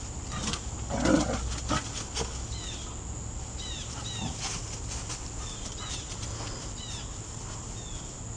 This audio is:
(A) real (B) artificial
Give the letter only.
A